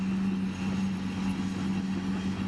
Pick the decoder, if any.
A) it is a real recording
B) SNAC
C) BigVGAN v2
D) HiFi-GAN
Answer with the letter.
A